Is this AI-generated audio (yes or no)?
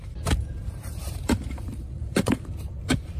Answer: yes